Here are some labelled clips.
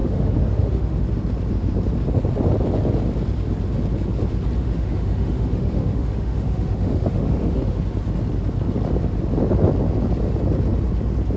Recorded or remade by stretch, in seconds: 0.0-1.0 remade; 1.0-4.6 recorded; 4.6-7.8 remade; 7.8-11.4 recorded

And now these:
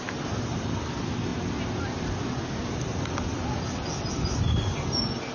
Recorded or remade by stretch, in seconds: 0.0-5.3 recorded

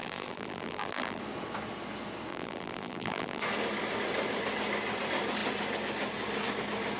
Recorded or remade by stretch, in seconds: 0.0-1.2 remade; 1.2-2.3 recorded; 2.3-3.4 remade; 3.4-7.0 recorded

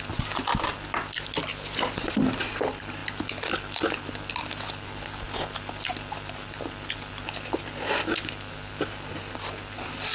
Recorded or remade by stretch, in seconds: 0.0-10.1 recorded

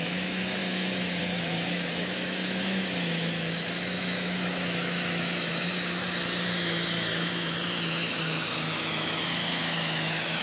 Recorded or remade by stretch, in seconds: 0.0-10.4 remade

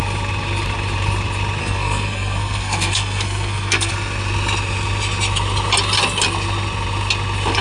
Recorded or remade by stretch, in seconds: 0.0-1.6 recorded; 1.6-3.9 remade; 3.9-7.6 recorded

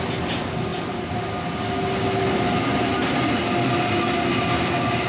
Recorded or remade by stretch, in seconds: 0.0-5.1 recorded